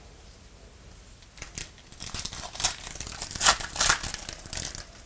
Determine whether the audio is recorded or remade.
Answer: recorded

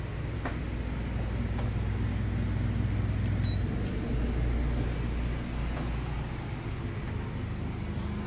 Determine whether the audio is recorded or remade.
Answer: recorded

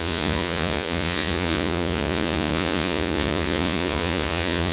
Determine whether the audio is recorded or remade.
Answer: remade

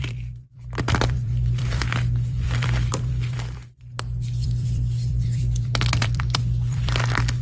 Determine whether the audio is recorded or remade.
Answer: remade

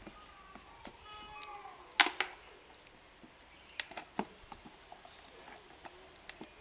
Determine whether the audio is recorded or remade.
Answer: recorded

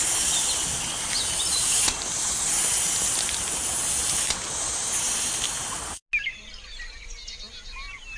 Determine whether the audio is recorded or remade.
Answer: recorded